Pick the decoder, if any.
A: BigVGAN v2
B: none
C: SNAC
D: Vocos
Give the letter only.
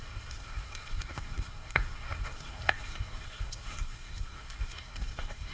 C